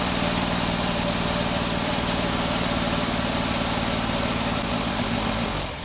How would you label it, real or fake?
fake